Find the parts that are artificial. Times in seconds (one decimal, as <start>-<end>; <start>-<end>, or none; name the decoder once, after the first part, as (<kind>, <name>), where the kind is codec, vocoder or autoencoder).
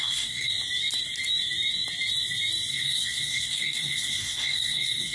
0.0-0.5 (codec, SNAC); 2.7-5.1